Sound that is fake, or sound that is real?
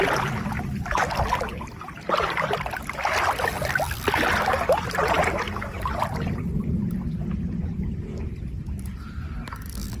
real